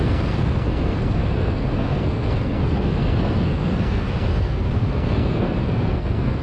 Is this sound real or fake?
fake